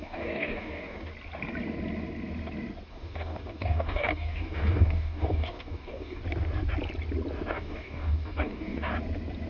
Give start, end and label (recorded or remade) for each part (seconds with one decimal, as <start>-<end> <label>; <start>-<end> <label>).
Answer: 0.0-1.1 remade; 1.1-2.9 recorded; 2.9-6.2 remade; 6.2-7.5 recorded; 7.5-8.9 remade; 8.9-9.5 recorded